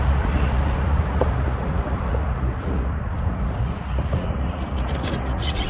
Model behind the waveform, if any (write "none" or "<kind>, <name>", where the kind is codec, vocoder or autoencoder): vocoder, Vocos